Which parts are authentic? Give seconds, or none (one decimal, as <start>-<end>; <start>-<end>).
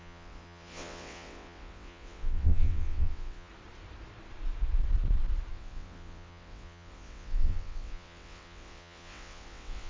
3.5-5.5